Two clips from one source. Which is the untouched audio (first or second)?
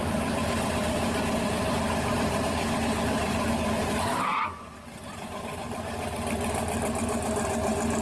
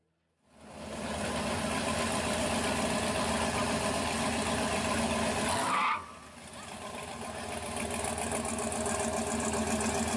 second